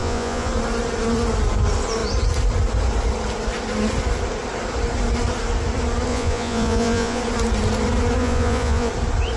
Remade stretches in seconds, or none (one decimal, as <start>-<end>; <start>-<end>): 0.0-0.5; 6.1-7.2; 8.2-8.9